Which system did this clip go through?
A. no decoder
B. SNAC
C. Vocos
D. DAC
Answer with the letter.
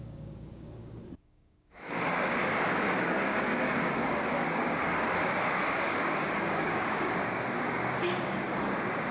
D